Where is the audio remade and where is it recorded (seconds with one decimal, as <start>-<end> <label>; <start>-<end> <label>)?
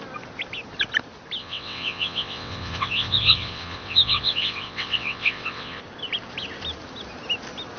0.0-1.4 recorded; 1.4-5.8 remade; 5.8-7.8 recorded